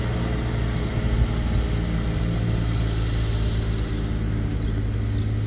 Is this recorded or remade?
recorded